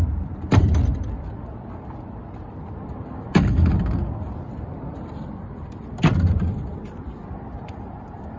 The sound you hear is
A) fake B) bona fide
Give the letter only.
A